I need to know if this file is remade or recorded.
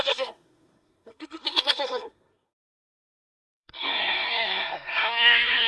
remade